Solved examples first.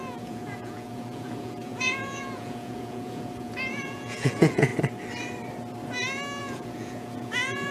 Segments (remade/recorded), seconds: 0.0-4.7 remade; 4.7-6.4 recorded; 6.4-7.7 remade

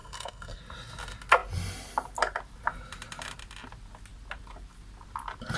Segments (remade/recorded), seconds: 0.0-0.6 remade; 0.6-5.6 recorded

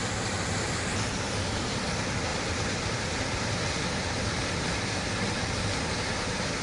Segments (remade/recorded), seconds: 0.0-6.6 recorded

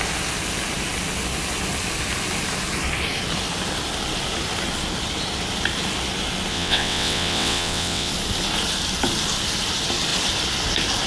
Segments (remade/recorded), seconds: 0.0-6.5 recorded; 6.5-8.1 remade; 8.1-11.1 recorded

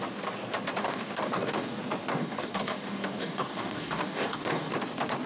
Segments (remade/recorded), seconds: 0.0-0.8 recorded; 0.8-1.8 remade; 1.8-2.2 recorded; 2.2-4.7 remade; 4.7-5.3 recorded

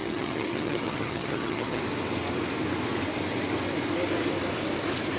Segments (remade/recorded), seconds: 0.0-1.8 remade; 1.8-5.2 recorded

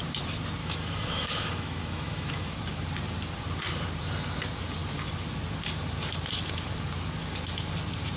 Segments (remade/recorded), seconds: 0.0-0.6 recorded; 0.6-2.5 remade; 2.5-8.2 recorded

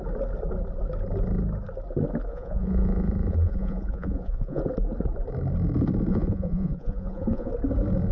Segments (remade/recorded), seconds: 0.0-2.3 recorded; 2.3-4.6 remade; 4.6-6.1 recorded; 6.1-7.5 remade; 7.5-8.1 recorded